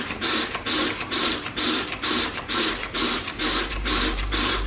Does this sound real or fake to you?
fake